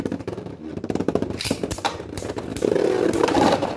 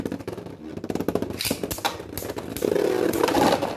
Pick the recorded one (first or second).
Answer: second